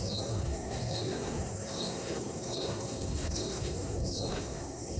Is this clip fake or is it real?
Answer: fake